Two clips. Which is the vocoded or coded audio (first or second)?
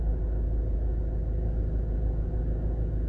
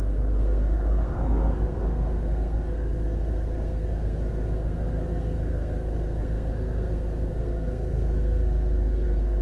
second